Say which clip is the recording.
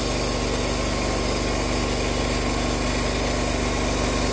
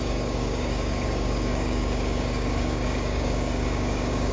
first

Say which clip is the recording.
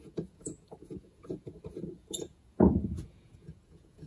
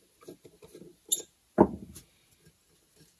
second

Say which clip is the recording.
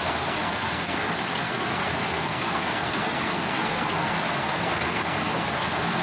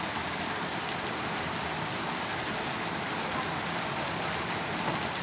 second